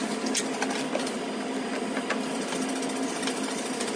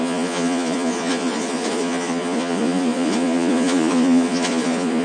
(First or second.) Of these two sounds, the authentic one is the first